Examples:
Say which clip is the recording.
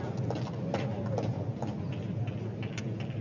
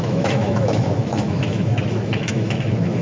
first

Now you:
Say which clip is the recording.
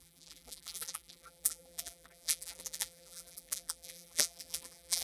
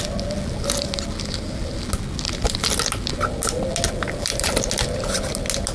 second